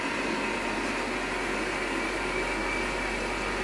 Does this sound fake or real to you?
real